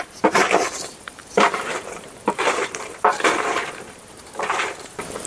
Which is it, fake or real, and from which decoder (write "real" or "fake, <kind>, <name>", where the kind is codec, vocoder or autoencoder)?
fake, vocoder, BigVGAN v2